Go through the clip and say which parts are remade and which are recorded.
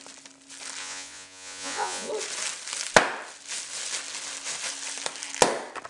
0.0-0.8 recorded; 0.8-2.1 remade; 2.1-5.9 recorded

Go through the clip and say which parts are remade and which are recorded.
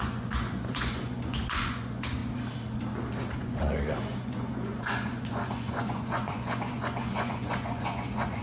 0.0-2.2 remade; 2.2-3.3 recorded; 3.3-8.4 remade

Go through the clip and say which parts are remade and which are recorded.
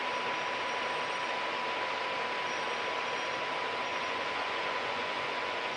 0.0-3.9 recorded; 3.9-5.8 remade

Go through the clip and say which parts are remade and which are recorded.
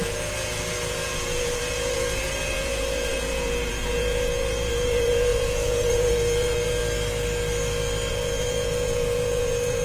0.0-6.8 remade; 6.8-8.1 recorded; 8.1-9.8 remade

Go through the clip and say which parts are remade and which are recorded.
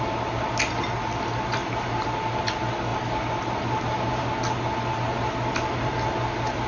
0.0-6.7 recorded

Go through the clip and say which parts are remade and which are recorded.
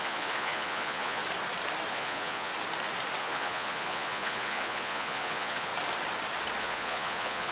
0.0-1.2 remade; 1.2-1.9 recorded; 1.9-2.5 remade; 2.5-3.2 recorded; 3.2-5.7 remade; 5.7-6.6 recorded; 6.6-7.5 remade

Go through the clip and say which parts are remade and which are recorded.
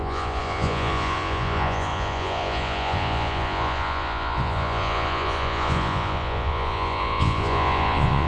0.0-8.3 remade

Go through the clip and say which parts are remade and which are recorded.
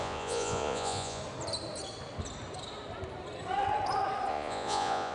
0.0-1.2 remade; 1.2-4.3 recorded; 4.3-5.1 remade